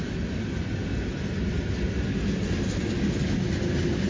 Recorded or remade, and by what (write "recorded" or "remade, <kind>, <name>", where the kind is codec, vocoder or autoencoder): recorded